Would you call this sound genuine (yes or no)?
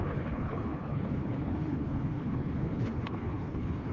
no